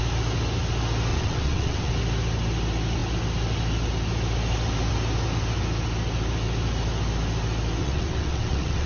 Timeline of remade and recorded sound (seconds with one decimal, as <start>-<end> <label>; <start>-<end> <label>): 0.0-1.1 recorded; 1.1-1.9 remade; 1.9-7.8 recorded; 7.8-8.9 remade